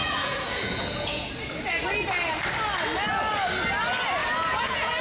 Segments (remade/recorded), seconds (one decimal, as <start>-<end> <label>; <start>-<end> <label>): 0.0-1.3 remade; 1.3-4.2 recorded; 4.2-5.0 remade